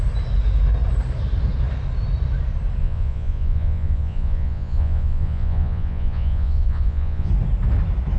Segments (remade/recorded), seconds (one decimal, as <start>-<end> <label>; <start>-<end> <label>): 0.0-2.8 recorded; 2.8-7.3 remade; 7.3-8.2 recorded